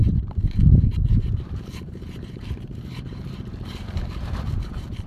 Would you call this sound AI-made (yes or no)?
yes